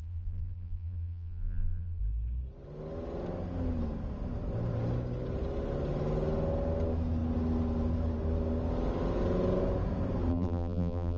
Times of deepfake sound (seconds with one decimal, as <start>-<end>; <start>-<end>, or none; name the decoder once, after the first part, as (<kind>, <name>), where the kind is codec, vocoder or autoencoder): 0.0-2.0 (vocoder, BigVGAN v2); 10.3-11.2